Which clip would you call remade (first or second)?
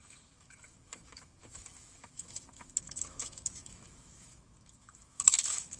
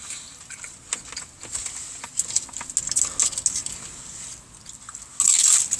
first